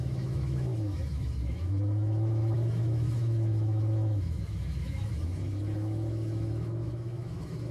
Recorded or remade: remade